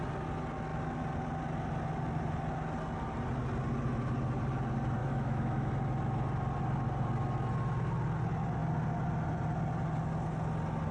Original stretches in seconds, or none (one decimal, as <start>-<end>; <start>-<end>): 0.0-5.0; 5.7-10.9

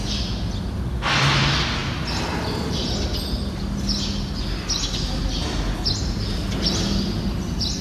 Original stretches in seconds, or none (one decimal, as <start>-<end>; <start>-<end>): 0.0-7.8

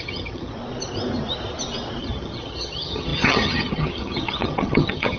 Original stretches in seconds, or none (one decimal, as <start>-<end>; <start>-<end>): 0.5-2.0